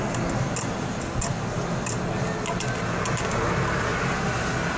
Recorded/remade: recorded